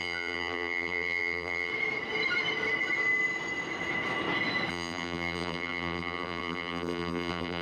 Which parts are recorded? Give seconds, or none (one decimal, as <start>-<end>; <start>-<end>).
1.7-4.7